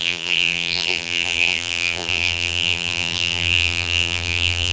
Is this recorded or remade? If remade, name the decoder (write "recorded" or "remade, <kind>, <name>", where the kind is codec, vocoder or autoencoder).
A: remade, vocoder, BigVGAN v2